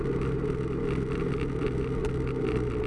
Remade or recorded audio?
recorded